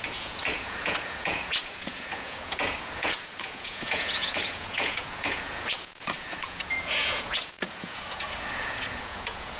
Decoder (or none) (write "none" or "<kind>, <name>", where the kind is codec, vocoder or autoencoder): vocoder, Vocos